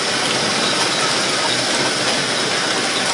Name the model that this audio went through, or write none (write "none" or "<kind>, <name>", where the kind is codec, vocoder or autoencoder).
none